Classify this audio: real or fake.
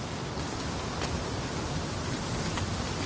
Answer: real